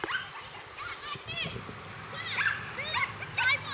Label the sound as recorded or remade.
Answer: recorded